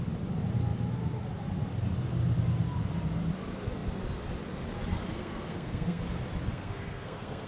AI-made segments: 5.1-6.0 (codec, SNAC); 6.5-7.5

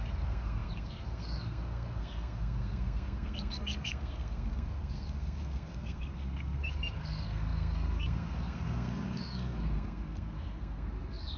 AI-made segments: 0.0-11.4 (codec, SNAC)

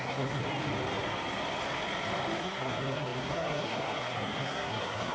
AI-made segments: 0.0-0.4 (codec, SNAC); 2.4-5.1

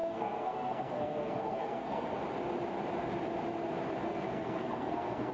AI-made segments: 0.0-2.2 (codec, SNAC); 4.0-5.3

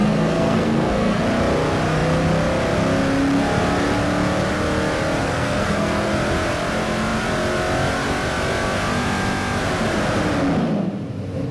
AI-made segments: 0.0-1.2 (codec, SNAC); 5.2-6.1

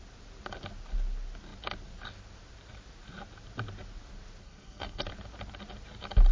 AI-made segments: 4.4-5.0 (codec, SNAC)

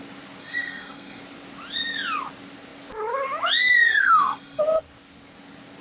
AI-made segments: 0.4-1.2 (codec, SNAC); 3.8-4.6